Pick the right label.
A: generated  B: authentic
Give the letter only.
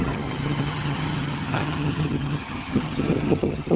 A